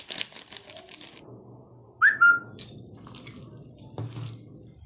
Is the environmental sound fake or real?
real